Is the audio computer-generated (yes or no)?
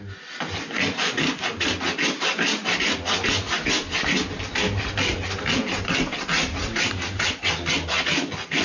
no